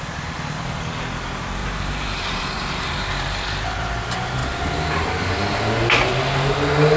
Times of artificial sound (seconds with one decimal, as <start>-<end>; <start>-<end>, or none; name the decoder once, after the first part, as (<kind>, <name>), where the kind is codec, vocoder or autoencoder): 1.6-3.1 (vocoder, BigVGAN v2)